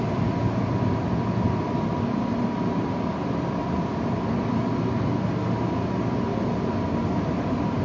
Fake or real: fake